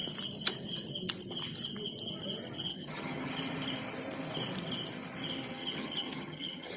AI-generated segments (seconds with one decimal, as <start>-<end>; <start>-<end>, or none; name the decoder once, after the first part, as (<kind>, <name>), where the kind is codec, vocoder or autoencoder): 2.7-3.3 (vocoder, HiFi-GAN); 5.6-6.8